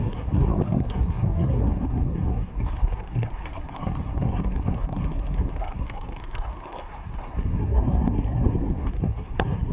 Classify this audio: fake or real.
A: fake